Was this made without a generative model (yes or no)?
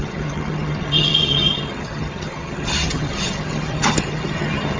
no